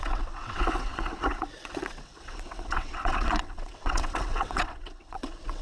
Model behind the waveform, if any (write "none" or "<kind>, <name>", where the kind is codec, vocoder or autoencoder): vocoder, WaveNeXt